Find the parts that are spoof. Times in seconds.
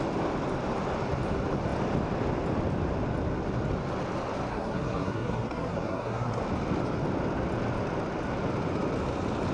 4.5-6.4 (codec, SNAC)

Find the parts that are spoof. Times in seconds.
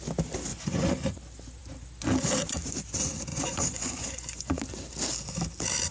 0.5-1.2 (vocoder, Vocos); 3.3-4.6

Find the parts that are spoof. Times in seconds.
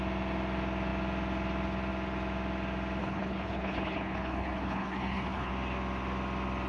3.0-5.5 (codec, HILCodec)